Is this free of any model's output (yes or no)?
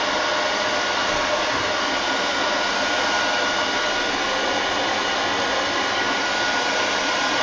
yes